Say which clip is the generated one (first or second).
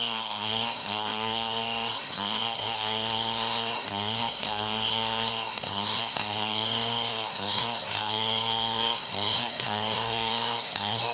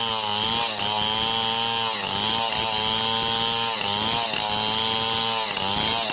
first